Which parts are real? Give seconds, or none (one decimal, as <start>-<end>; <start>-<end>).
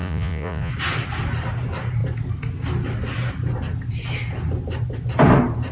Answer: 0.7-5.7